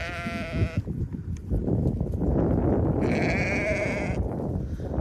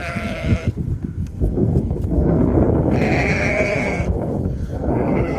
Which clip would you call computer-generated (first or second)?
second